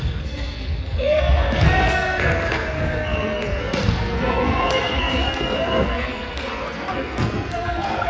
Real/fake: fake